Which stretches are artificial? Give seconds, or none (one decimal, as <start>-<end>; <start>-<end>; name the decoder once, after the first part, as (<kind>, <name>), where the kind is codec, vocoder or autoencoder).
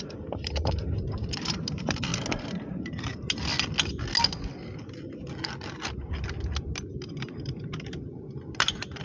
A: 0.0-2.1 (vocoder, BigVGAN v2); 7.0-9.0